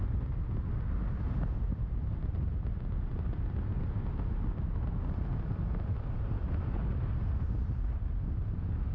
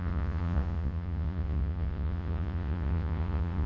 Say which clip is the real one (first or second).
first